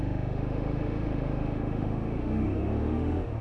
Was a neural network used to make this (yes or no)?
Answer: yes